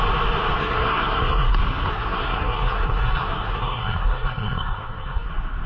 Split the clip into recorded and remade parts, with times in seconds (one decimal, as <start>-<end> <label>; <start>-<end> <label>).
0.0-0.6 recorded; 0.6-1.5 remade; 1.5-1.9 recorded; 1.9-5.3 remade; 5.3-5.7 recorded